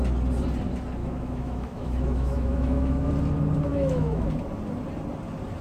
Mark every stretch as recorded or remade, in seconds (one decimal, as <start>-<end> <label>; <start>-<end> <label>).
0.0-1.0 recorded; 1.0-3.1 remade; 3.1-3.7 recorded; 3.7-4.3 remade; 4.3-5.6 recorded